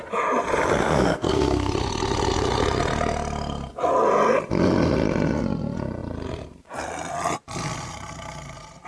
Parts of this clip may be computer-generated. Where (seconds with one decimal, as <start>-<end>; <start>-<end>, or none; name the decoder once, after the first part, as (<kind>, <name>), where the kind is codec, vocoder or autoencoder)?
0.8-1.7 (codec, SNAC)